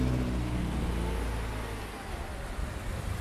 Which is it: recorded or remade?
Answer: recorded